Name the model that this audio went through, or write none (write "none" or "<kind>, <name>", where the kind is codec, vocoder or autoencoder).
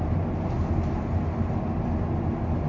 none